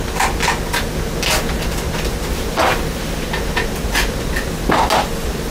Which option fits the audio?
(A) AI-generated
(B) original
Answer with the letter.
B